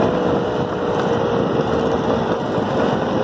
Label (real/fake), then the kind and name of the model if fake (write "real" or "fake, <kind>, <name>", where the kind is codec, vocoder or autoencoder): real